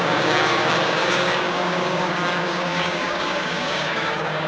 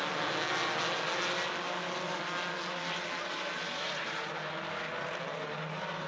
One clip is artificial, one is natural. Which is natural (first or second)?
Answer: second